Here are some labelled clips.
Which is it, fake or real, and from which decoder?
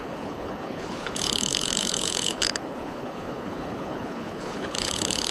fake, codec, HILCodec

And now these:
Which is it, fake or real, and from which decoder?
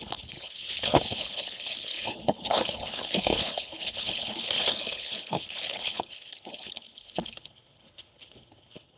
fake, codec, HILCodec